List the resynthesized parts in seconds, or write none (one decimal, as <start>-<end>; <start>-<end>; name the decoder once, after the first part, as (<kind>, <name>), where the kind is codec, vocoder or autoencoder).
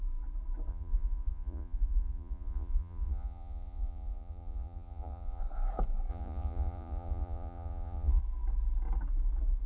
0.7-5.4 (vocoder, Vocos); 6.1-8.2